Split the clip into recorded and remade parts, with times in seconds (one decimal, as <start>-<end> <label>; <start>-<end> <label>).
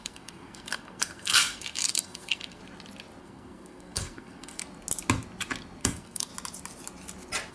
0.0-2.6 remade; 2.6-3.2 recorded; 3.2-4.6 remade; 4.6-5.8 recorded; 5.8-6.3 remade; 6.3-7.5 recorded